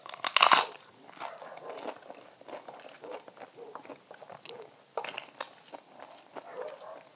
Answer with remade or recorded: recorded